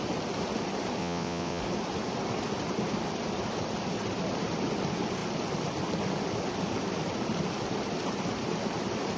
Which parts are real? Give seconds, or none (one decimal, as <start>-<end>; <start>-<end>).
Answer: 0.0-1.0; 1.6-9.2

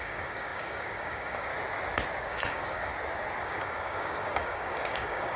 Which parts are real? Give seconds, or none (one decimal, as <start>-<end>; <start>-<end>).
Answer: 1.5-2.2; 2.9-3.4

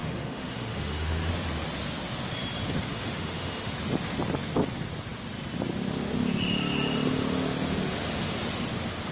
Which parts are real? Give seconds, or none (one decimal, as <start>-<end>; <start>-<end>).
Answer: 1.3-2.9; 3.7-9.1

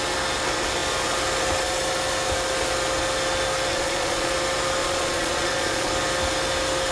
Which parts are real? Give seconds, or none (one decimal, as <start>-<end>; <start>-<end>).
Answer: 0.0-3.7; 4.3-4.8; 5.9-6.9